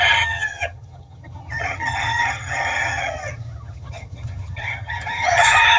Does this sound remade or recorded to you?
remade